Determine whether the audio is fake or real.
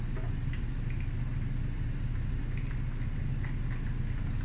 real